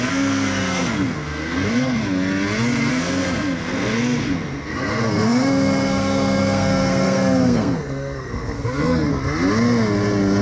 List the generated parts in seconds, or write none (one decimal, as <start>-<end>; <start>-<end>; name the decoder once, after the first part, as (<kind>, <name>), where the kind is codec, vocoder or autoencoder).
0.0-2.0 (codec, SNAC); 2.9-9.1